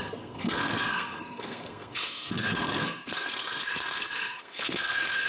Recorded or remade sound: remade